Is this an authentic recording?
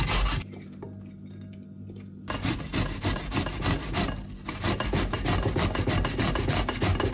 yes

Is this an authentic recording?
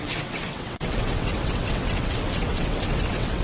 no